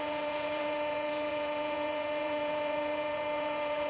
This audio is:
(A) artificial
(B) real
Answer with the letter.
A